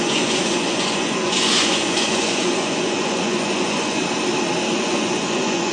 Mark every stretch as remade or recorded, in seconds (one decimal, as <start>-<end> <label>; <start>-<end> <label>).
0.0-4.0 remade; 4.0-4.7 recorded; 4.7-5.7 remade